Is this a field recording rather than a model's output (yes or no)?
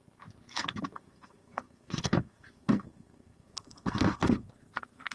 no